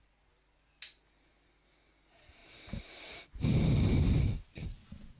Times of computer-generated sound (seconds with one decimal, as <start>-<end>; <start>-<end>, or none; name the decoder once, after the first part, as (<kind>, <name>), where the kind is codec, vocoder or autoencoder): 2.4-4.3 (vocoder, BigVGAN v2)